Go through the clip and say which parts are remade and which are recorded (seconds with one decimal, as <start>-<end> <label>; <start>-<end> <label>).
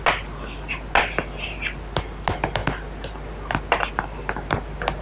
0.0-5.0 recorded